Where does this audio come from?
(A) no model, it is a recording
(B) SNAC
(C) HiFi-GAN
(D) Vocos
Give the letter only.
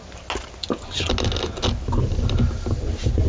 A